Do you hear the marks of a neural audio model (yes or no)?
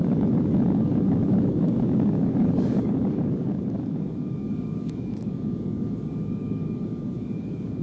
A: yes